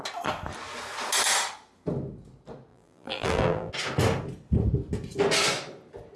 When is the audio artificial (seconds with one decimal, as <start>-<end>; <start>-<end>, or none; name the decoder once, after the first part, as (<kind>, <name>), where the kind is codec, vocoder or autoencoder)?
2.7-3.7 (vocoder, BigVGAN v2)

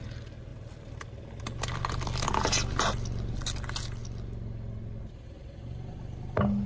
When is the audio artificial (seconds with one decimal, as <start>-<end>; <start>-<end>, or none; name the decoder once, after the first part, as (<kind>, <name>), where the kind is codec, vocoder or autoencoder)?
0.5-1.4 (vocoder, BigVGAN v2)

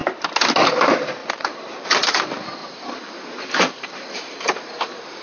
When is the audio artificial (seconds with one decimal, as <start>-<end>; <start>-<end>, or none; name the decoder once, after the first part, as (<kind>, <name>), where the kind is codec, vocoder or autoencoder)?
0.7-5.2 (vocoder, BigVGAN v2)

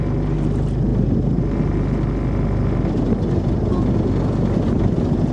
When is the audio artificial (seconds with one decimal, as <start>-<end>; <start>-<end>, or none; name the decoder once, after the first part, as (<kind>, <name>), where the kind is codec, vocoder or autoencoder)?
none

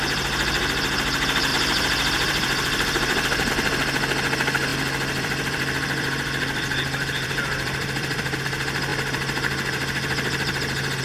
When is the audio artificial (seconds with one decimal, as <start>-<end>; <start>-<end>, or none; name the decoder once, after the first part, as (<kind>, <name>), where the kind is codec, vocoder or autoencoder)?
1.5-3.5 (vocoder, BigVGAN v2); 4.7-8.4